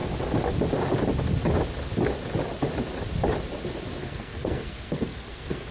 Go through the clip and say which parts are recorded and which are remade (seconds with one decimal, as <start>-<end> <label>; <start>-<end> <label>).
0.0-4.0 recorded; 4.0-5.7 remade